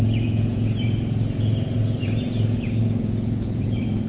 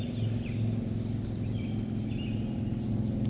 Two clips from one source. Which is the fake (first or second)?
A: first